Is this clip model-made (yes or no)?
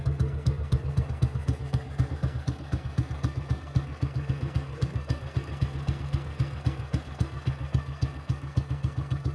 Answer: yes